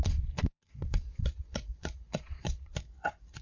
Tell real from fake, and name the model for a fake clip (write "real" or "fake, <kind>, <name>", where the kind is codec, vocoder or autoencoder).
fake, vocoder, Vocos